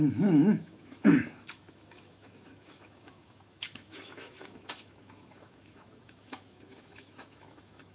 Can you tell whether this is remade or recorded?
remade